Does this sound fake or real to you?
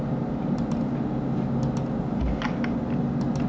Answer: real